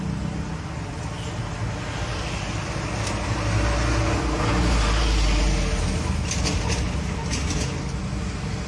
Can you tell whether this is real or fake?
real